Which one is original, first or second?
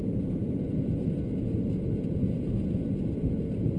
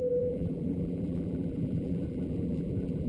first